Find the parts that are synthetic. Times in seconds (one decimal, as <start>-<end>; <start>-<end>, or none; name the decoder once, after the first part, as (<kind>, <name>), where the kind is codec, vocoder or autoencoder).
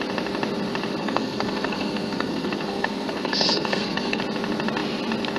1.0-4.2 (codec, SNAC)